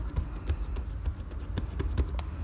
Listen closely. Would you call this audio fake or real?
real